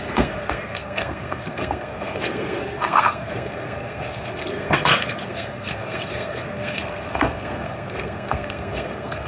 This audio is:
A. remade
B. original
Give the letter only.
A